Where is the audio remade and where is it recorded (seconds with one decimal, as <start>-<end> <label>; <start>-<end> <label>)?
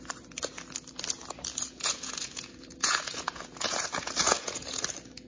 0.0-1.6 recorded; 1.6-4.8 remade; 4.8-5.3 recorded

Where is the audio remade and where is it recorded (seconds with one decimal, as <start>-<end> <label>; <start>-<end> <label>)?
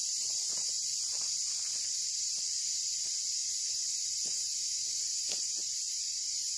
0.0-0.5 remade; 0.5-3.4 recorded; 3.4-6.6 remade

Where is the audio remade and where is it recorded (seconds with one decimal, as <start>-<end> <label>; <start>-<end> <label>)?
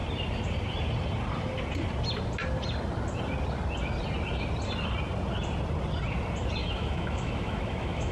0.0-6.6 recorded; 6.6-8.1 remade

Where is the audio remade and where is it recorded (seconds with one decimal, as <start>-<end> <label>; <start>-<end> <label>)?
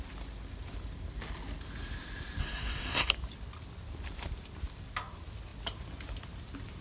0.0-2.4 recorded; 2.4-3.1 remade; 3.1-6.8 recorded